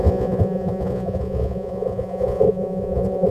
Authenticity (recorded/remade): remade